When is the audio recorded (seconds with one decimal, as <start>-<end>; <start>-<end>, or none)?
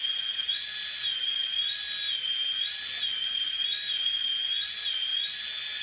0.0-5.8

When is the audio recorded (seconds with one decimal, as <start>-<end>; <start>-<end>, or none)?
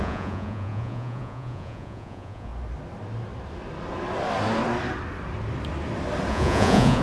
2.5-6.3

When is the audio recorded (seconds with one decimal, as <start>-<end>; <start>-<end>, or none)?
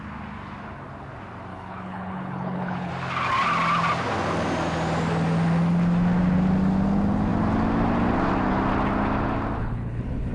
0.0-1.5; 2.9-9.6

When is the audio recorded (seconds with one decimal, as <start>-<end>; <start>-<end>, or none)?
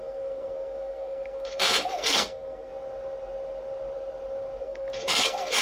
2.7-4.6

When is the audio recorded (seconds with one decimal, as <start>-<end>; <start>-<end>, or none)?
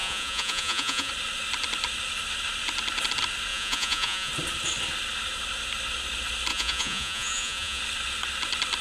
1.1-3.5; 4.3-6.5; 7.8-8.8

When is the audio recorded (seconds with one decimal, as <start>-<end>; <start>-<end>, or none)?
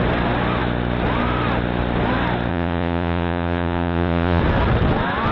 0.0-2.5; 4.4-5.3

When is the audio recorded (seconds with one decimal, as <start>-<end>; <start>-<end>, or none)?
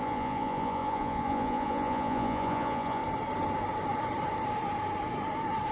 3.0-5.7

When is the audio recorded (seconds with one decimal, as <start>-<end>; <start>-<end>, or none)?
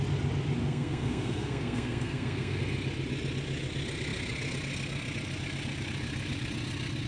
0.0-0.6; 2.6-7.1